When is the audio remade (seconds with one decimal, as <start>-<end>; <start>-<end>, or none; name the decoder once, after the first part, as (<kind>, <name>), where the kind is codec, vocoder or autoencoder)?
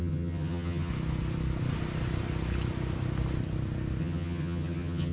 0.0-0.9 (vocoder, HiFi-GAN); 4.0-5.1